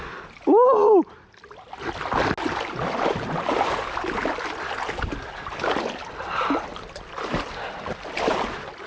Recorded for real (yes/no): yes